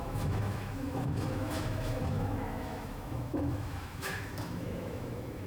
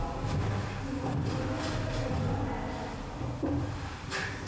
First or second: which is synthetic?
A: first